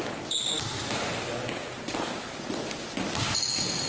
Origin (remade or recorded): recorded